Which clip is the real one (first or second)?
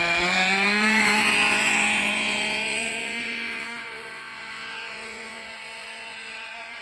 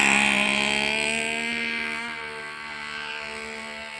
second